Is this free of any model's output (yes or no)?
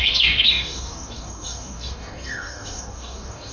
no